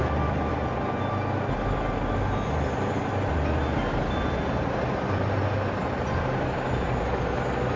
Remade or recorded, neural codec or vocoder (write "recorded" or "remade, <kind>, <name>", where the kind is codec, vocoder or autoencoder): recorded